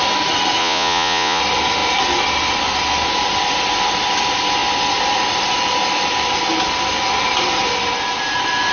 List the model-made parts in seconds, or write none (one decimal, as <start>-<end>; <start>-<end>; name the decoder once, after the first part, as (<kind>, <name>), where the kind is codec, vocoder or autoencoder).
0.6-1.4 (vocoder, Vocos)